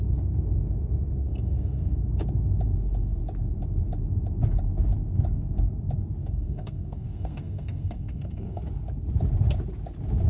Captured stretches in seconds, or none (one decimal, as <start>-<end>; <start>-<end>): 0.0-1.2; 2.1-6.2; 8.6-10.3